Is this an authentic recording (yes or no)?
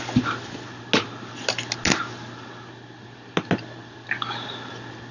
yes